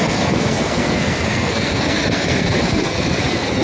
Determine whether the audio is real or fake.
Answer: fake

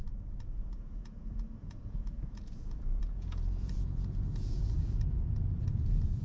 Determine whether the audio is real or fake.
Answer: fake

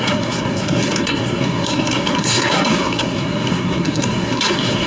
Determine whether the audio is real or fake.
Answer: fake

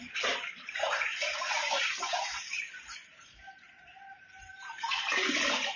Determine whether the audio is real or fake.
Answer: fake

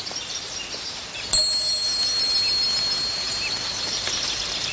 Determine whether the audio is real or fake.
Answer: real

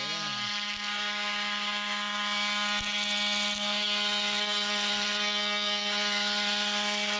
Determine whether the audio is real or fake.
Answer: real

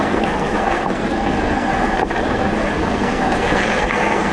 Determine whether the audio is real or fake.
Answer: fake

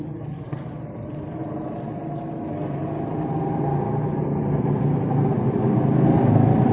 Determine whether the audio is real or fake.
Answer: real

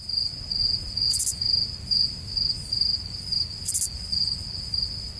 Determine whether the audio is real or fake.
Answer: real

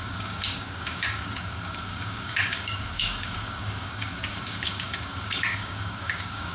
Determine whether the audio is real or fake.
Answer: fake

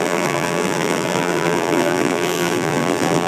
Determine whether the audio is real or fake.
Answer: fake